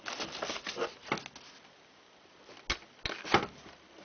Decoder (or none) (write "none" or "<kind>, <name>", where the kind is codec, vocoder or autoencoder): none